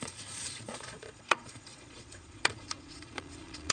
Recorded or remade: remade